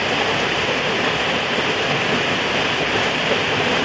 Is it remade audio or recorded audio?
remade